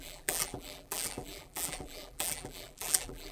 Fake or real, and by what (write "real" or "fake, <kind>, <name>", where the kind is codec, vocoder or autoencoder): fake, vocoder, BigVGAN v2